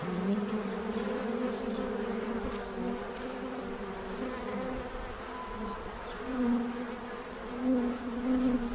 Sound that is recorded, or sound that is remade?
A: recorded